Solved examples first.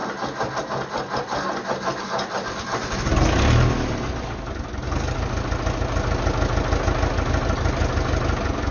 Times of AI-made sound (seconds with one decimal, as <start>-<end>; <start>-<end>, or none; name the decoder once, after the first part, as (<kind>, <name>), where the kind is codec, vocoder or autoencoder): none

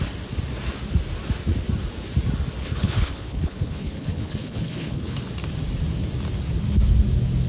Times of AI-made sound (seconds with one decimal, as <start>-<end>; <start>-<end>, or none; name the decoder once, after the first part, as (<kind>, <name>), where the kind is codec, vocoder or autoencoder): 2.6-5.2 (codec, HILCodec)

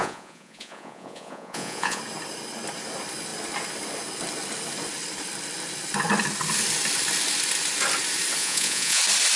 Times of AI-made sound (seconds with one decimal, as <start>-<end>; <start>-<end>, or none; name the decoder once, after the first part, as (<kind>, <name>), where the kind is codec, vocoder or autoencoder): 0.0-2.0 (vocoder, Vocos); 8.4-9.0

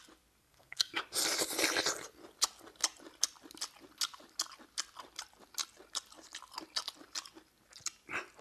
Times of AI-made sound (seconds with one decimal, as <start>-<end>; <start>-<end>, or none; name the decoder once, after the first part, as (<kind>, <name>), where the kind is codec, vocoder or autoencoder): 0.4-1.0 (codec, SNAC)

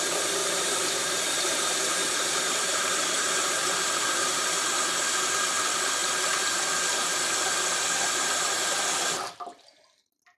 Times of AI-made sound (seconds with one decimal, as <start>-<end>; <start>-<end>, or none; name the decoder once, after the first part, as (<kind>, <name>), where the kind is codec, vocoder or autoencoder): 0.4-4.5 (vocoder, BigVGAN v2)

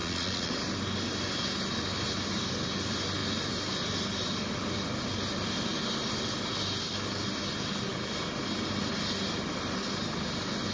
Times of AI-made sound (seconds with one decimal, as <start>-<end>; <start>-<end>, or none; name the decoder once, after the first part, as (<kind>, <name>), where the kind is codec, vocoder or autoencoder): 0.0-0.5 (vocoder, Vocos)